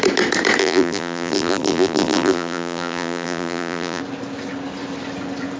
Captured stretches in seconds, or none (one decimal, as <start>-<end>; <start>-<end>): 0.0-0.6; 4.0-5.6